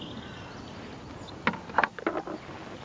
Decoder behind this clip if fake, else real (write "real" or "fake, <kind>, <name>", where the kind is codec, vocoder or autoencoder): real